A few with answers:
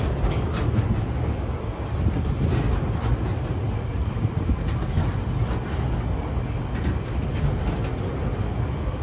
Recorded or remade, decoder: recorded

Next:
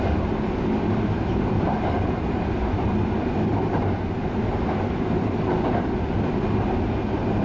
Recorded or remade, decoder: recorded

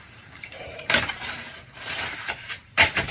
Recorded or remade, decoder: remade, vocoder, BigVGAN v2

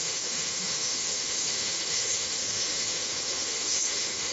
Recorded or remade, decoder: remade, autoencoder, DAC-VAE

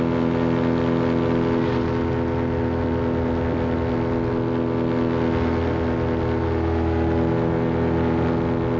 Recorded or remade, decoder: recorded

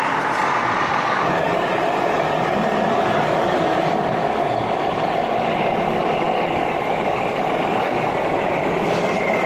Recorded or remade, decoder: remade, codec, DAC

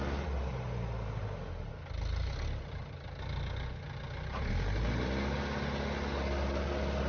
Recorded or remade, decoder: recorded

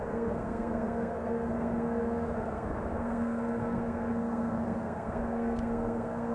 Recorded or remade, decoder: remade, codec, SNAC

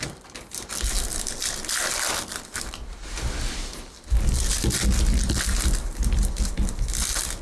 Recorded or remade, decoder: recorded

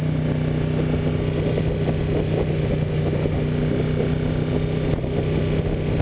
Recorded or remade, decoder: recorded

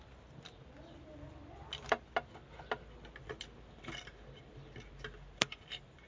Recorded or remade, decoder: remade, vocoder, BigVGAN v2